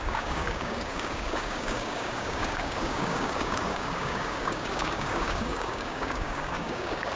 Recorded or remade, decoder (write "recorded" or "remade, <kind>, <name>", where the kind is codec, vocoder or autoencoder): remade, codec, DAC